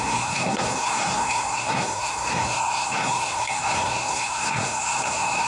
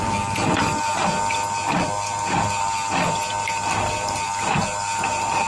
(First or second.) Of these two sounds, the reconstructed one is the first